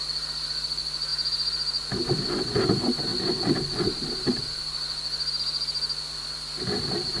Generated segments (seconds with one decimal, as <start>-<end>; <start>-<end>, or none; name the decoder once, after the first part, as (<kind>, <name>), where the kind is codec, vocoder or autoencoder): none

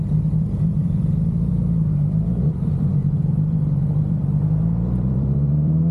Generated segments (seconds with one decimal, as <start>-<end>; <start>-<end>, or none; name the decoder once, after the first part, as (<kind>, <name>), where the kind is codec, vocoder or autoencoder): 0.0-5.9 (vocoder, BigVGAN v2)

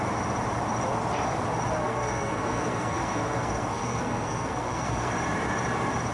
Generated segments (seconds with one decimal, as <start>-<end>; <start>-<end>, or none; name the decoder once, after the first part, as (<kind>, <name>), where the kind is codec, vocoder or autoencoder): 1.8-5.1 (codec, SNAC)

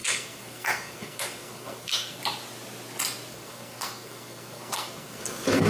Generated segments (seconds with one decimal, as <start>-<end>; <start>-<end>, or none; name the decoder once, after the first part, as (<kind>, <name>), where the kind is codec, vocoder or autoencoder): 0.0-2.2 (codec, SNAC); 3.3-5.7

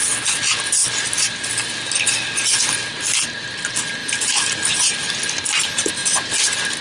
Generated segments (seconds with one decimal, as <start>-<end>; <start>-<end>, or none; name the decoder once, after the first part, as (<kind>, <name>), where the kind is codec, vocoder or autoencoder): none

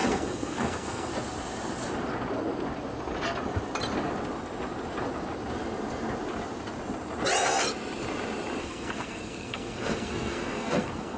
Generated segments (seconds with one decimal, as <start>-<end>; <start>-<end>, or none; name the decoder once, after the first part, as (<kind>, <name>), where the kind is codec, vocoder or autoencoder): 0.0-1.1 (codec, SNAC); 8.6-11.2

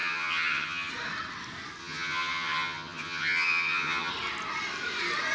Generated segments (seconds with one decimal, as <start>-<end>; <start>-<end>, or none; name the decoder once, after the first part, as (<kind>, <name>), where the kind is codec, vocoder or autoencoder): 0.0-0.9 (vocoder, HiFi-GAN); 1.8-4.1